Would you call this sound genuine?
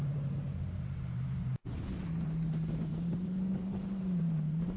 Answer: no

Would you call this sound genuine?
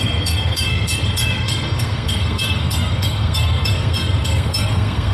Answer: no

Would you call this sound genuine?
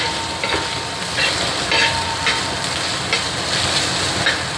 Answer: yes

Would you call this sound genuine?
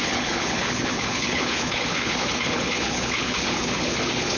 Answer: no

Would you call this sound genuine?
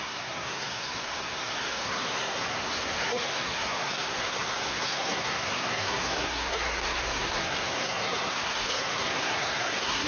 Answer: no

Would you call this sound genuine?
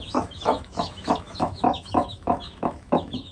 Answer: no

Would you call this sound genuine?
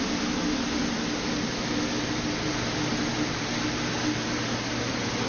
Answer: yes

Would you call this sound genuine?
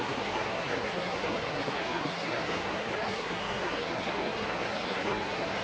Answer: no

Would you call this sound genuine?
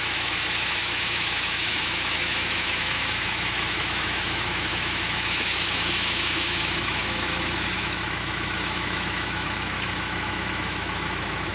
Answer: no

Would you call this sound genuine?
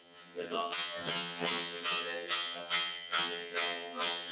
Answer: no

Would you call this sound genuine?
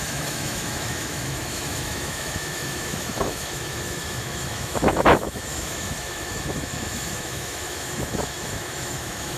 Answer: no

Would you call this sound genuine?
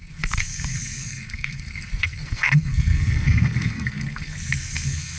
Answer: no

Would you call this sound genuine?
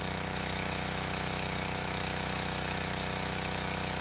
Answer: no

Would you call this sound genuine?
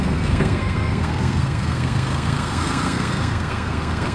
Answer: no